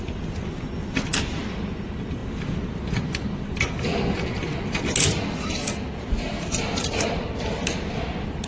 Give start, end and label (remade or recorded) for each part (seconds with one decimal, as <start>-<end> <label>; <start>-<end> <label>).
0.0-8.5 recorded